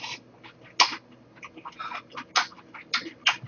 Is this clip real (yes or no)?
yes